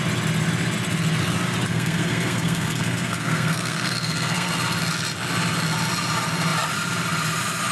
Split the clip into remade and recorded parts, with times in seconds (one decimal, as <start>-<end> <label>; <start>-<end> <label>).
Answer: 0.0-1.7 recorded; 1.7-4.5 remade; 4.5-7.7 recorded